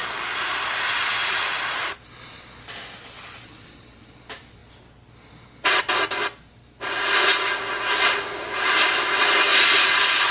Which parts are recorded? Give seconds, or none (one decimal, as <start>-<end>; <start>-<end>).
0.0-10.3